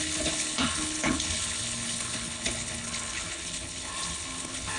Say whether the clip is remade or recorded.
remade